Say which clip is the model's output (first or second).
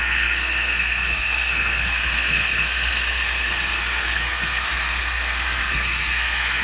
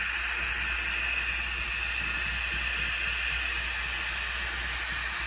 first